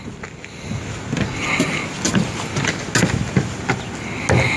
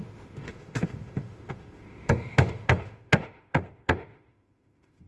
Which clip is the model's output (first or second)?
second